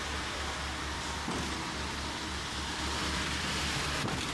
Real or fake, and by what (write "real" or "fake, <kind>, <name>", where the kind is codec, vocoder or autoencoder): fake, vocoder, BigVGAN v2